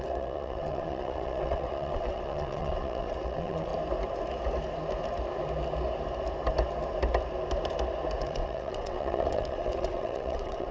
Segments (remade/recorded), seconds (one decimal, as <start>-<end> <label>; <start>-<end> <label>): 0.0-3.7 remade; 3.7-8.2 recorded; 8.2-10.7 remade